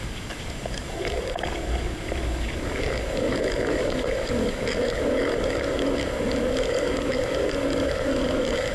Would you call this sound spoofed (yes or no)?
yes